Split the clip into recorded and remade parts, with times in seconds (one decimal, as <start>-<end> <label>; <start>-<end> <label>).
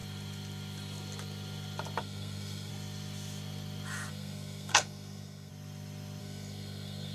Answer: 0.0-2.0 recorded; 2.0-2.7 remade; 2.7-4.1 recorded; 4.1-5.5 remade; 5.5-6.2 recorded; 6.2-7.1 remade